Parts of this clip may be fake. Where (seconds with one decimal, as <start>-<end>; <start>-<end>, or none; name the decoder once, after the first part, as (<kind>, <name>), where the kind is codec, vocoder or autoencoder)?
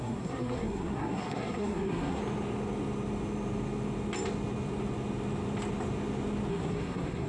0.0-2.2 (codec, SNAC); 6.5-7.3